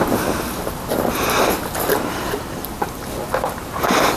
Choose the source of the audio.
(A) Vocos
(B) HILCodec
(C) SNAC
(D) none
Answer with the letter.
D